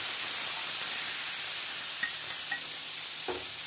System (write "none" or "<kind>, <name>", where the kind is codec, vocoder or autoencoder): none